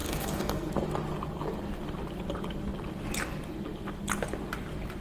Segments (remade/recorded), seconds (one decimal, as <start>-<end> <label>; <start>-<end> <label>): 0.0-0.7 remade; 0.7-5.0 recorded